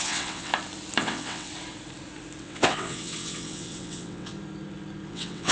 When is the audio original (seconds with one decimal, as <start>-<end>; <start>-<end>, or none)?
0.5-1.0; 1.5-2.4; 4.3-5.1